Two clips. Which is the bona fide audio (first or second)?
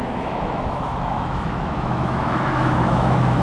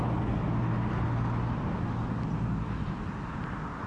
second